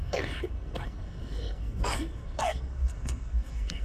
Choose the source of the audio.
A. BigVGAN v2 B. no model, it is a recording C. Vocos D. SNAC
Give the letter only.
D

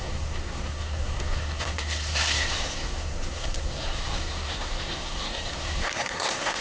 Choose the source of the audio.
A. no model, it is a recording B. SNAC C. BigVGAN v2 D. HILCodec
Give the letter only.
B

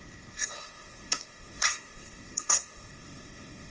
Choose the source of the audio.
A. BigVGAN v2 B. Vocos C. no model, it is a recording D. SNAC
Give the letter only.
D